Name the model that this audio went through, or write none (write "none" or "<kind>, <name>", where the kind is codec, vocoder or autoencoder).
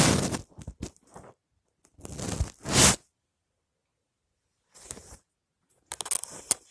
none